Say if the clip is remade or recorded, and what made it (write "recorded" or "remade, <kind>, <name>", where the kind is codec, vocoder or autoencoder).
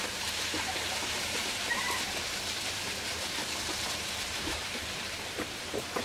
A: remade, vocoder, BigVGAN v2